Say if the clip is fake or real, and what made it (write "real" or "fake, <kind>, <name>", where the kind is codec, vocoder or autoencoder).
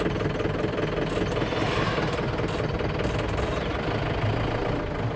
real